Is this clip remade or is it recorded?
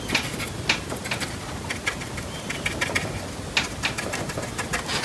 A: recorded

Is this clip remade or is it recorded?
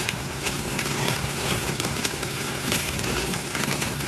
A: remade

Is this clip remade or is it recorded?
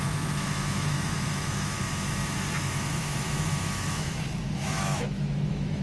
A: remade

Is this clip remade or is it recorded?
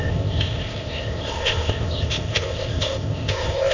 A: remade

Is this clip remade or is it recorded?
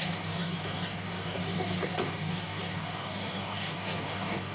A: remade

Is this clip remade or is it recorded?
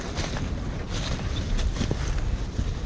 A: recorded